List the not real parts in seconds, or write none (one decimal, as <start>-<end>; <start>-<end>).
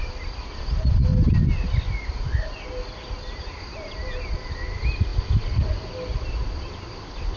none